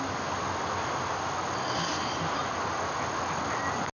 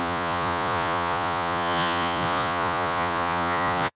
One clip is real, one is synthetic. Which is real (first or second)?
first